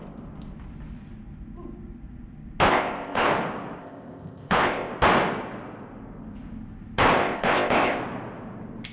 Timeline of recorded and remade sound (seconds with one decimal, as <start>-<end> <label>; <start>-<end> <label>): 0.0-2.7 recorded; 2.7-3.3 remade; 3.3-3.8 recorded; 3.8-4.9 remade; 4.9-7.2 recorded; 7.2-8.0 remade; 8.0-8.9 recorded